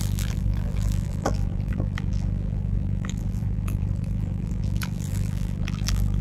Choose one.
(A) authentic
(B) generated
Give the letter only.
B